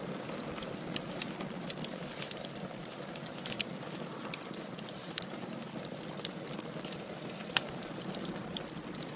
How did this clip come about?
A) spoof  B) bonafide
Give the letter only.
B